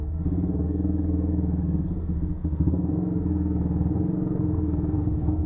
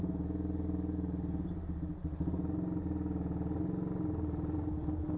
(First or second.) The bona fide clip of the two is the second